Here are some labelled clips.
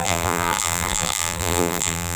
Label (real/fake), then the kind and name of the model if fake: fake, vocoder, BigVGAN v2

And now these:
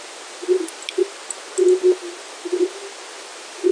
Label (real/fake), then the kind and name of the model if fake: real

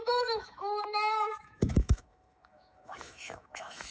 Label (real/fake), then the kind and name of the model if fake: fake, autoencoder, DAC-VAE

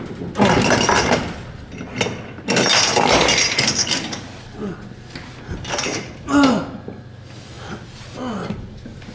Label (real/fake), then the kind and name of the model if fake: real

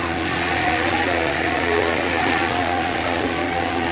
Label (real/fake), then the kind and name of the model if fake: fake, vocoder, Vocos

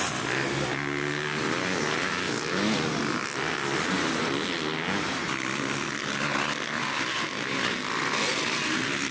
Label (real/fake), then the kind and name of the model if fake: real